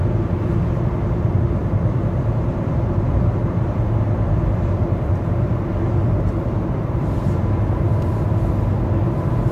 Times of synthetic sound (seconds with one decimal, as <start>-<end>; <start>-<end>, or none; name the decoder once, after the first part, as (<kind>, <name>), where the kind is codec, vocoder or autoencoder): 1.6-6.8 (vocoder, BigVGAN v2)